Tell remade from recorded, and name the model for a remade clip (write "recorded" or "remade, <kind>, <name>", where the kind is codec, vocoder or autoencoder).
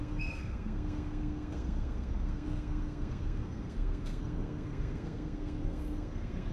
remade, codec, SNAC